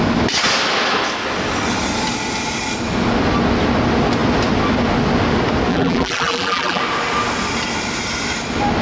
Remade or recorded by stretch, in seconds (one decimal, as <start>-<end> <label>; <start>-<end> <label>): 0.0-5.7 recorded; 5.7-6.8 remade; 6.8-8.8 recorded